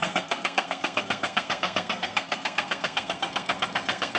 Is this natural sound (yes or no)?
no